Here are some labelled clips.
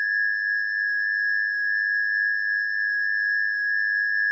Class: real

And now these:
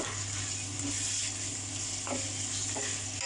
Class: real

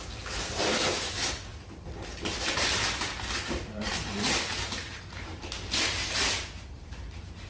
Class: real